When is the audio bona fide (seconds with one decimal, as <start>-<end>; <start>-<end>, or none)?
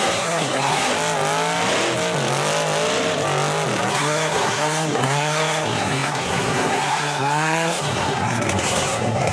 0.9-3.9